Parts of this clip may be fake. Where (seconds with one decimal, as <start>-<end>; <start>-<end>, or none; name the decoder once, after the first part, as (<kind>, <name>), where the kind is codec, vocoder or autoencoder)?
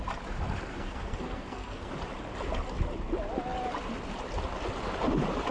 0.7-1.9 (codec, SNAC)